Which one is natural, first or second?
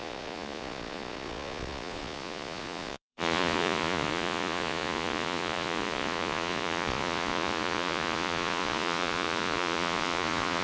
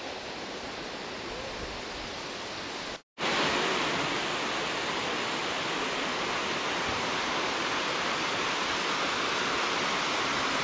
second